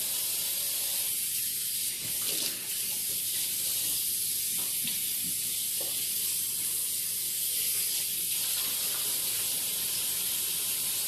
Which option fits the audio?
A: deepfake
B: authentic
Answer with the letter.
B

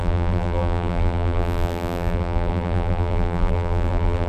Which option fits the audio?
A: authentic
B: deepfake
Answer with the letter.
B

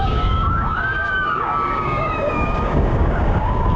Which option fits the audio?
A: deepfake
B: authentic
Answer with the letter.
A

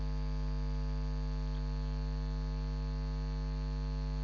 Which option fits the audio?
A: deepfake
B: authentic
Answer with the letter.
B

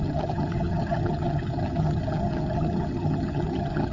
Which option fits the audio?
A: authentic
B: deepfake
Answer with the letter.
B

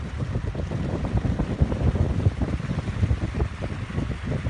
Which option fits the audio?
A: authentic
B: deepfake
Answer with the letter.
A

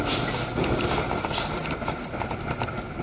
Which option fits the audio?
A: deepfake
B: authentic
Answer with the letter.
B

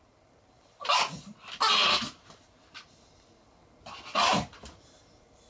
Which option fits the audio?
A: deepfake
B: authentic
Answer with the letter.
B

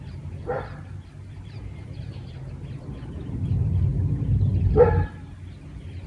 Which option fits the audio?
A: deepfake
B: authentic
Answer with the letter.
B